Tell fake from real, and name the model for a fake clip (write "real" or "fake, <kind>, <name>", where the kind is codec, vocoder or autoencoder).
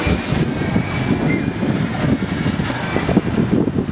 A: real